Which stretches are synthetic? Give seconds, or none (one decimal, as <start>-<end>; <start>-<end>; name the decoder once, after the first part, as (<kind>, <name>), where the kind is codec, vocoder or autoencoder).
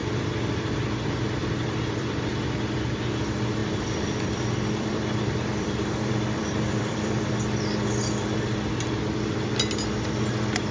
0.0-0.7 (vocoder, BigVGAN v2); 1.4-2.2; 3.6-7.3